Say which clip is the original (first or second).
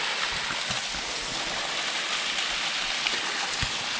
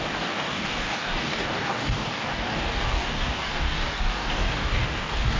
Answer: first